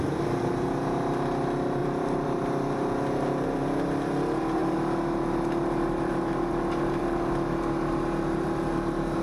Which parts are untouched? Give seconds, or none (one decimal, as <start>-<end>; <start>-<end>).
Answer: 0.0-1.8; 3.0-9.2